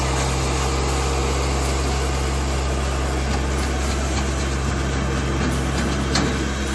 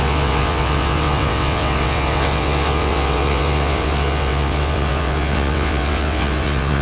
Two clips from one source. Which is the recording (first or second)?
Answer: first